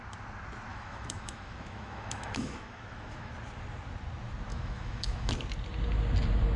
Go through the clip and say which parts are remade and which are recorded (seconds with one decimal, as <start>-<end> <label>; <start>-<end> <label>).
0.0-0.7 recorded; 0.7-3.3 remade; 3.3-4.5 recorded; 4.5-5.3 remade; 5.3-6.6 recorded